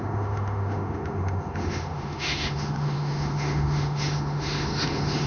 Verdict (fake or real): fake